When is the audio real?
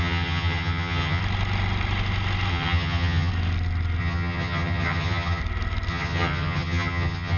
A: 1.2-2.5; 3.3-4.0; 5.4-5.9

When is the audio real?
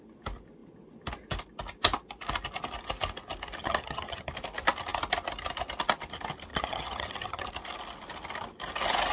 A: 0.0-3.6; 4.3-6.5; 7.5-9.1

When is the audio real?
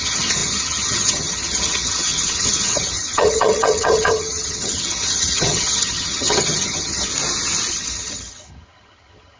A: 7.1-7.7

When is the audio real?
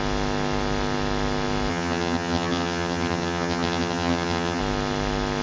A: 0.0-1.7; 4.6-5.4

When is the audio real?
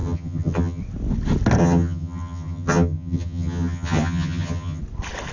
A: 0.8-1.6; 4.8-5.3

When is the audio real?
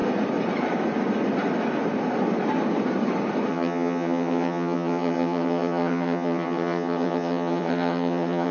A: 0.0-3.5